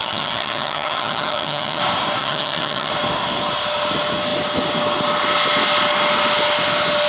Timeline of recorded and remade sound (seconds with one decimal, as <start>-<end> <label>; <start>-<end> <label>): 0.0-1.8 remade; 1.8-2.2 recorded; 2.2-2.9 remade; 2.9-7.1 recorded